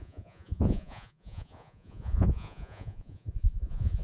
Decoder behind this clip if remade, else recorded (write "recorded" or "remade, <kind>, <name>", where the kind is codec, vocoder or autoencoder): remade, vocoder, Vocos